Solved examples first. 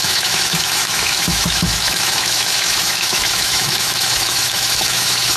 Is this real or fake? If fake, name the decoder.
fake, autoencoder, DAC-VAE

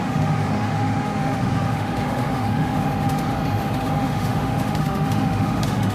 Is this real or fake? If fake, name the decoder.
fake, autoencoder, DAC-VAE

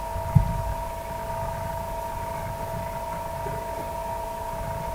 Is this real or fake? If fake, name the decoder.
real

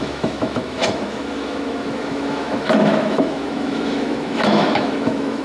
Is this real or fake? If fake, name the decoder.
fake, autoencoder, DAC-VAE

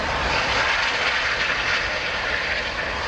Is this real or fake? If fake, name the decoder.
real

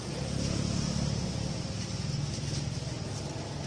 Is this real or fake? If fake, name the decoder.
real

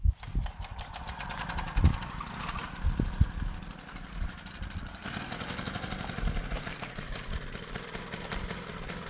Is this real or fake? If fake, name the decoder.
real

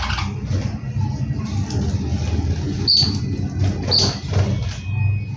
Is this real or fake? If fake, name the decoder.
real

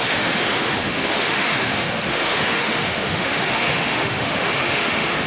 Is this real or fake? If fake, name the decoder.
fake, autoencoder, DAC-VAE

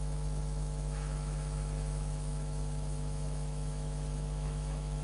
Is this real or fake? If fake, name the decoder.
fake, autoencoder, DAC-VAE